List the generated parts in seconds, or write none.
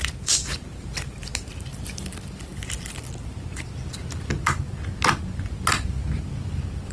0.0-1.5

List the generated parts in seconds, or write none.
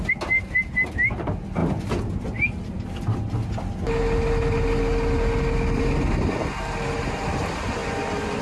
none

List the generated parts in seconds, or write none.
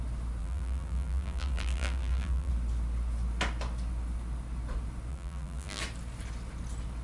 0.4-2.5; 5.1-5.8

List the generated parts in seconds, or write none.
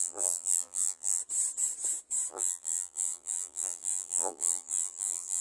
0.0-1.2; 2.3-5.4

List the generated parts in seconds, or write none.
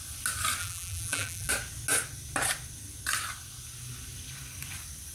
0.6-1.5